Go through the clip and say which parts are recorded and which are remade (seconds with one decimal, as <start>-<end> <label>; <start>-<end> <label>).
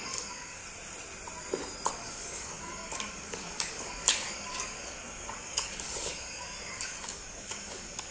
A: 0.0-0.6 remade; 0.6-1.9 recorded; 1.9-8.1 remade